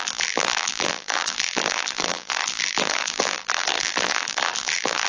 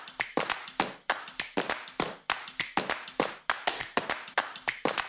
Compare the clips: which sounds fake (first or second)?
first